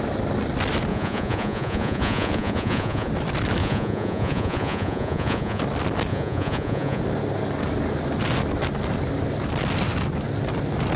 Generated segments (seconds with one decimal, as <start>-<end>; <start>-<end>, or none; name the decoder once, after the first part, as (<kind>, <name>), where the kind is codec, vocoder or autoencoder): 0.9-3.1 (vocoder, Vocos); 3.6-5.6; 6.1-7.0